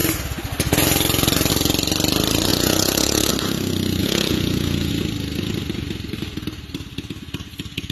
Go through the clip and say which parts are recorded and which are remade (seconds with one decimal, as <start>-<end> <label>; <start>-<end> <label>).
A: 0.0-2.5 recorded; 2.5-3.3 remade; 3.3-4.0 recorded; 4.0-4.9 remade; 4.9-7.9 recorded